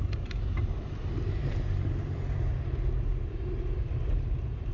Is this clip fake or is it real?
fake